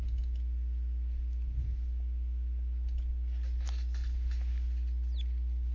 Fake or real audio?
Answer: real